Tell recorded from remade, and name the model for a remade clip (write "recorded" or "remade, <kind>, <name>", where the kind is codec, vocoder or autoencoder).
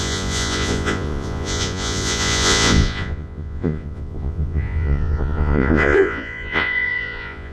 remade, vocoder, Vocos